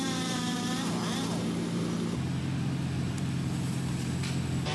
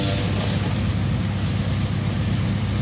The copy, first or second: first